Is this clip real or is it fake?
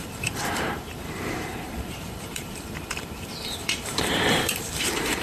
fake